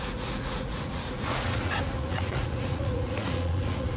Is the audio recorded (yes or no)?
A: no